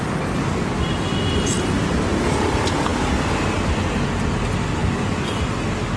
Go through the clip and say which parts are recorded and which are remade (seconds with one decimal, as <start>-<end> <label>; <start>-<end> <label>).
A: 0.0-6.0 recorded